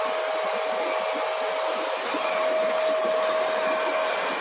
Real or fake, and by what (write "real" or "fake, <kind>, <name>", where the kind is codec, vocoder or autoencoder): real